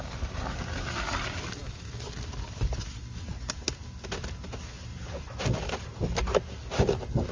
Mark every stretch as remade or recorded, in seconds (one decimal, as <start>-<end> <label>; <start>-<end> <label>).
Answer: 0.0-7.3 recorded